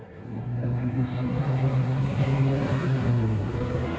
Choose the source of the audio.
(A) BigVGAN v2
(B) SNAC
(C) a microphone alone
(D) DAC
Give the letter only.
B